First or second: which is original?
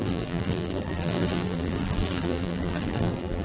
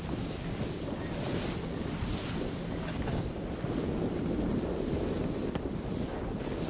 second